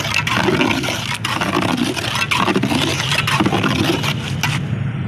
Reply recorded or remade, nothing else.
recorded